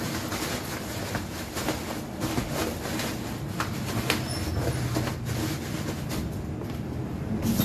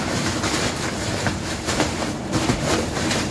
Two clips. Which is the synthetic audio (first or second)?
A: second